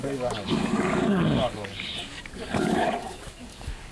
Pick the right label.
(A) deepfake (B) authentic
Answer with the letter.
A